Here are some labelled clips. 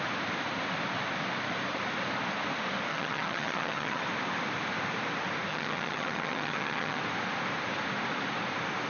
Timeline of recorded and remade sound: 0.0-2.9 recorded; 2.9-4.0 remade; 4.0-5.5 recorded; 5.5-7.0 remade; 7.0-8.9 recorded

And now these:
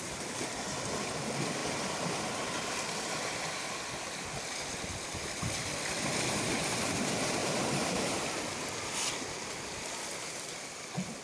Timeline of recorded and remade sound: 0.0-7.4 recorded; 7.4-8.0 remade; 8.0-11.2 recorded

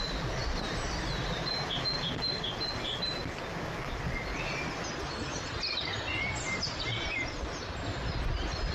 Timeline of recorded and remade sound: 0.0-8.7 recorded